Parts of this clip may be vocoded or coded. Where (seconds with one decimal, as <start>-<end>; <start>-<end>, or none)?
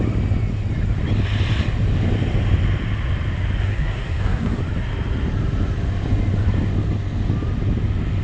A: 3.6-4.6